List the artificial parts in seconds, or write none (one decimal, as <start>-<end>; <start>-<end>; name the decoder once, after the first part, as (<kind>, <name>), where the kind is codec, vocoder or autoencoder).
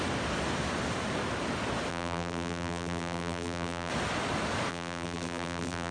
1.9-3.9 (vocoder, BigVGAN v2); 4.7-5.9